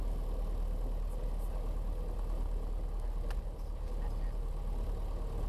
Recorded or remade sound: recorded